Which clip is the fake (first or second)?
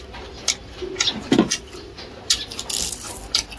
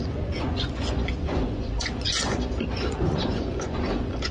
second